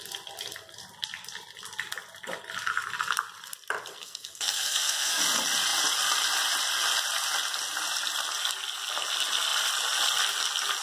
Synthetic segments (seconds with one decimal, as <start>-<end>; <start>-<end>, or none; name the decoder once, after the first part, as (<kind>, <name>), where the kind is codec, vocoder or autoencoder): 3.9-5.2 (codec, SNAC)